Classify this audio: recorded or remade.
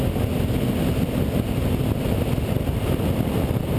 recorded